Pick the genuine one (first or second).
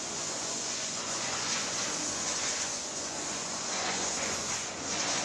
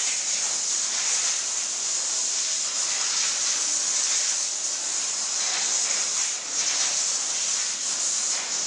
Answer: second